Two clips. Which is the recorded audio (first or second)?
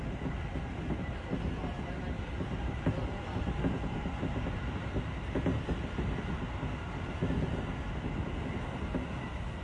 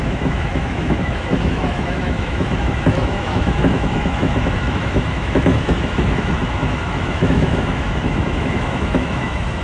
first